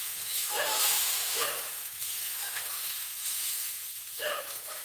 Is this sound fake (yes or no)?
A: yes